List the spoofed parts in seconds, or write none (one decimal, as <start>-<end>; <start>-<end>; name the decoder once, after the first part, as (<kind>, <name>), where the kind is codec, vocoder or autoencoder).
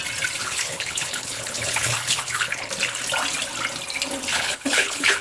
0.4-2.7 (codec, HILCodec); 4.3-5.2